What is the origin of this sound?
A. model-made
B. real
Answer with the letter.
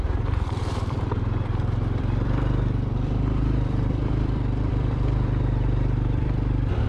A